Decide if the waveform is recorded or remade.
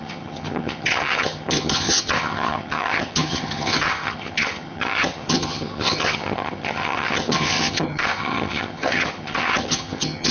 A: remade